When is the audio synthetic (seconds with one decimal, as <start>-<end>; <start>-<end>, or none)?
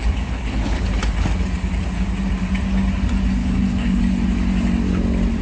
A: 0.0-0.8; 3.4-4.0